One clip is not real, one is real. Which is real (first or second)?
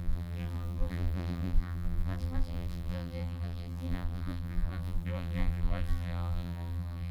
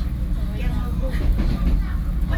second